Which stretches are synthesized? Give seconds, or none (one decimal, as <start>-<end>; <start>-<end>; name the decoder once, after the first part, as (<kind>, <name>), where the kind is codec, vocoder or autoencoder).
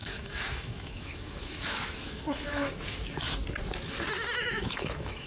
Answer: 0.0-3.2 (autoencoder, DAC-VAE); 4.4-5.3